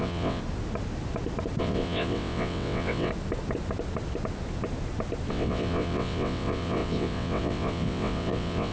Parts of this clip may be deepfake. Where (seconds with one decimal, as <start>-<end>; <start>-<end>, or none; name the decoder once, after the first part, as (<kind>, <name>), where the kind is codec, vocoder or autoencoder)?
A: 0.0-0.4 (vocoder, WaveNeXt); 1.6-3.1; 5.3-8.7

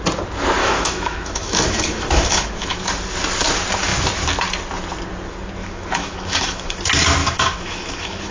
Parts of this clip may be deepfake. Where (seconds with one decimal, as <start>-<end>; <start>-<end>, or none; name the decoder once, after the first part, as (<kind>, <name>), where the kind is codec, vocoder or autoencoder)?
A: 0.6-2.8 (autoencoder, DAC-VAE); 5.6-6.8; 7.2-8.3

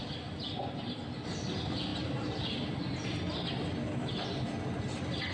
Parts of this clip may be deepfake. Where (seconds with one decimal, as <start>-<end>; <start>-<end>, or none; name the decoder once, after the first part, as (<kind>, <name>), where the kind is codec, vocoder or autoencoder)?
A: none

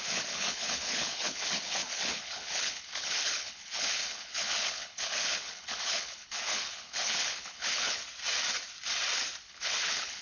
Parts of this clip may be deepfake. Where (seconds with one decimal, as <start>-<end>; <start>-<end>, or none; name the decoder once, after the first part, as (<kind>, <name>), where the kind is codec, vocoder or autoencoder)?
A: 0.0-8.0 (codec, HILCodec); 9.4-10.2

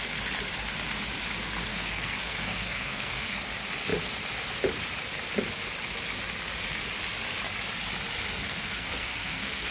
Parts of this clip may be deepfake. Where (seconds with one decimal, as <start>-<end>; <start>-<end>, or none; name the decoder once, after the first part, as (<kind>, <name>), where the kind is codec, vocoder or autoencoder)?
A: 1.7-3.4 (codec, SNAC); 8.4-9.7